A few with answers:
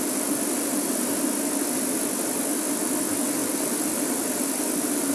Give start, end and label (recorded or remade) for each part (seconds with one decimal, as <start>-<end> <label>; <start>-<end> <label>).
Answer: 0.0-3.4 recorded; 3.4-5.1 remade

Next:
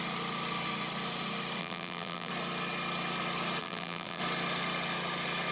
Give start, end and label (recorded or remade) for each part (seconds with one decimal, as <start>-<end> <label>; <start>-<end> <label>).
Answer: 0.0-1.6 recorded; 1.6-2.3 remade; 2.3-3.6 recorded; 3.6-4.2 remade; 4.2-5.5 recorded

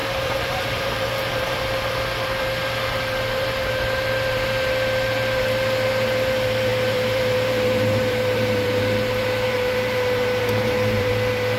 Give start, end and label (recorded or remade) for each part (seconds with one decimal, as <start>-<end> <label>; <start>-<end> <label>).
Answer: 0.0-1.6 remade; 1.6-6.7 recorded; 6.7-11.1 remade; 11.1-11.6 recorded